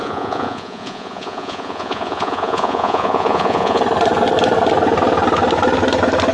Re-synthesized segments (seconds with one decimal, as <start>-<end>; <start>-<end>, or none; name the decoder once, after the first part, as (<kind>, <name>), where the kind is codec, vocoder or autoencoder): 0.0-3.8 (vocoder, Vocos)

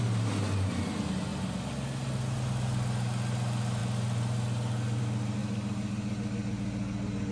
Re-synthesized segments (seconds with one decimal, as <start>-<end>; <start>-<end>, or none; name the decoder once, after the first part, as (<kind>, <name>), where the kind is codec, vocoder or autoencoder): none

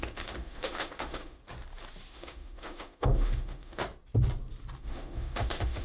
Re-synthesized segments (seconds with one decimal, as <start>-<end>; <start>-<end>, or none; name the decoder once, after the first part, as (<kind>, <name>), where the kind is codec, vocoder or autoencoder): 0.0-1.4 (autoencoder, DAC-VAE); 2.1-3.8; 4.8-5.8

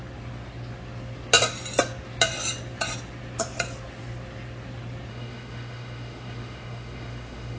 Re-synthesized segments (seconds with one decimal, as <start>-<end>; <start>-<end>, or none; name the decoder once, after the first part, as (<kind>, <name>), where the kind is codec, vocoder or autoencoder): 5.1-7.6 (autoencoder, DAC-VAE)